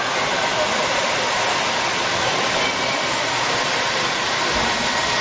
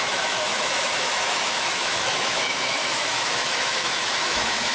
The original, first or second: first